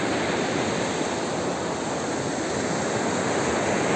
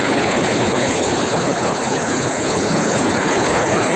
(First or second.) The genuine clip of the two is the first